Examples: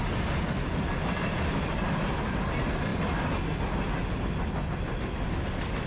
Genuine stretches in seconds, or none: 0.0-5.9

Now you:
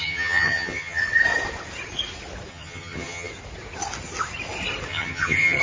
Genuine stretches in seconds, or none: 1.0-2.5; 3.3-4.9

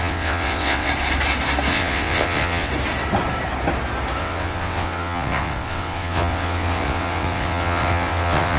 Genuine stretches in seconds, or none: 0.9-1.7; 2.7-4.2